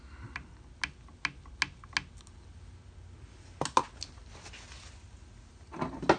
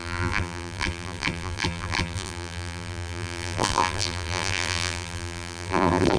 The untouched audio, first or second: first